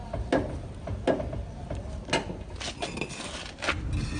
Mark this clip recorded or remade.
recorded